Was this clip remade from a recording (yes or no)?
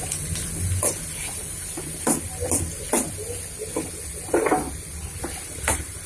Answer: yes